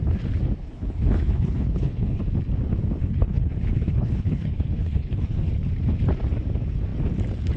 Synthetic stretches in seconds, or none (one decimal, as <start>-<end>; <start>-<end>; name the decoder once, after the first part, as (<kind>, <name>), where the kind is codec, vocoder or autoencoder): 0.6-2.2 (codec, HILCodec); 3.0-5.5